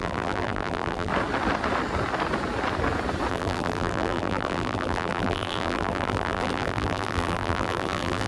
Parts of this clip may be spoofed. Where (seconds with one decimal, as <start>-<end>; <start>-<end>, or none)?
0.0-1.1; 3.3-8.3